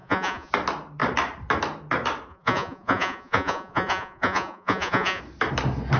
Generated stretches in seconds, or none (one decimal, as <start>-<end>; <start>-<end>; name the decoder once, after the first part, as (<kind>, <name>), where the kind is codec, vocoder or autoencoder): 0.0-0.5 (vocoder, Vocos); 2.3-5.2